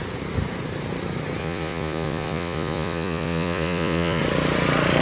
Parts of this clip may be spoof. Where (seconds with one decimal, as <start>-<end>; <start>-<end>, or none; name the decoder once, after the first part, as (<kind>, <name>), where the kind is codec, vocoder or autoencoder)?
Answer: 1.4-4.2 (vocoder, Vocos)